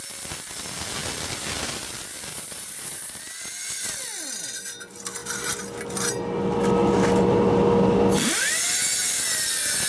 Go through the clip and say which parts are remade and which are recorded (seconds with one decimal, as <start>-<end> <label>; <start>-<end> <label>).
0.0-2.3 recorded; 2.3-3.2 remade; 3.2-9.9 recorded